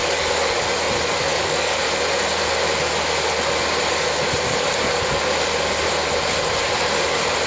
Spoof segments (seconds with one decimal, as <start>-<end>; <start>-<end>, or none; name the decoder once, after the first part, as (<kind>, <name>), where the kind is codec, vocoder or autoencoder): 0.0-0.7 (codec, DAC); 1.3-1.8